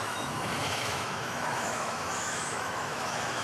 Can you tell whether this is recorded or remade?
remade